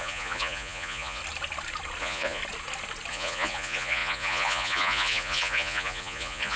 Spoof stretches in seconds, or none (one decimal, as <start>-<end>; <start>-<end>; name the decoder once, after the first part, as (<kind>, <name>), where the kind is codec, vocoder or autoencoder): 0.0-1.2 (vocoder, Vocos); 2.0-2.4; 3.1-6.6